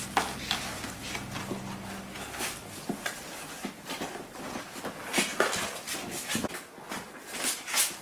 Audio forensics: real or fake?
real